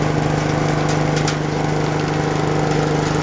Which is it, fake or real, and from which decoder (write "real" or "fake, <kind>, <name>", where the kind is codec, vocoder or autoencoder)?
real